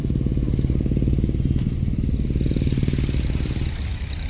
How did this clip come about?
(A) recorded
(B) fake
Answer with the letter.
A